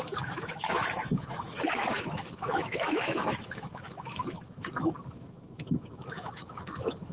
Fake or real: fake